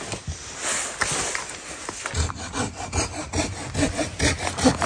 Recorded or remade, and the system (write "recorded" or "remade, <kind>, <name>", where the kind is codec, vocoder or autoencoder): recorded